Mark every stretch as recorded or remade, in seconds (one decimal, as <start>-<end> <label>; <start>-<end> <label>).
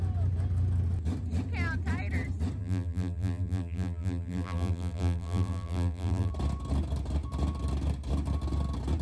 0.0-2.6 recorded; 2.6-6.3 remade; 6.3-9.0 recorded